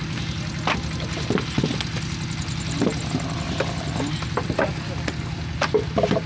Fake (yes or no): no